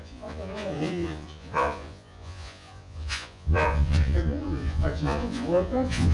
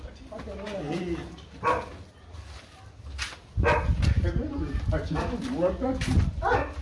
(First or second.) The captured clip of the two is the second